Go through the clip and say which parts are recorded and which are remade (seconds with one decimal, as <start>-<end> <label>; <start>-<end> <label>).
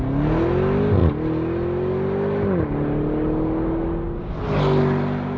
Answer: 0.0-5.4 recorded